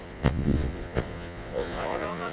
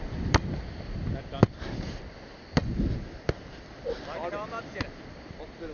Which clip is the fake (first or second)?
first